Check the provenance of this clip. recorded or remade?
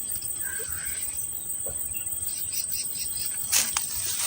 recorded